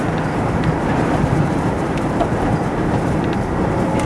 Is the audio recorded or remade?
remade